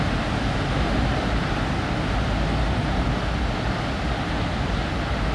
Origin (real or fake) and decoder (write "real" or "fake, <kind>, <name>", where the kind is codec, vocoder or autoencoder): real